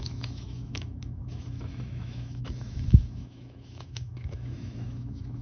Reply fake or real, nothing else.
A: fake